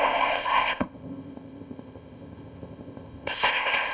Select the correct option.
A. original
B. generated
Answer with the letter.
B